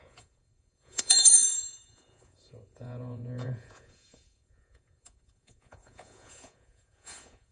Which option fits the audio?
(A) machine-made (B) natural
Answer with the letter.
A